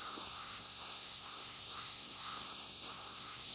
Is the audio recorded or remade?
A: remade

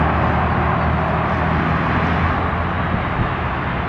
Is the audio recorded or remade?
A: recorded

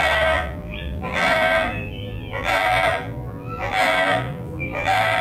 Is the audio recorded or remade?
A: remade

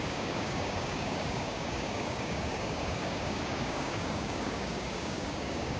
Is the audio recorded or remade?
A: remade